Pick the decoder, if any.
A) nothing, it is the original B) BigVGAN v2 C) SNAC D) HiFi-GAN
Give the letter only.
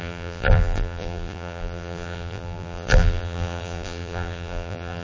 B